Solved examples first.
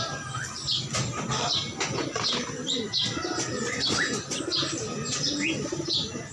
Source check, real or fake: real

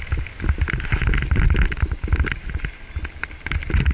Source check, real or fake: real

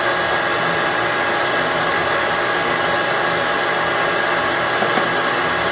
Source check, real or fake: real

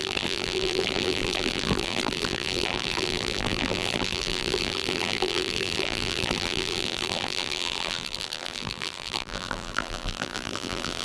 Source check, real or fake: fake